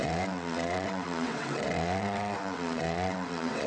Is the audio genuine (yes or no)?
no